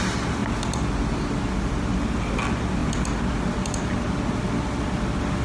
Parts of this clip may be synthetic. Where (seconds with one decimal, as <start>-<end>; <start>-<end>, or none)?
none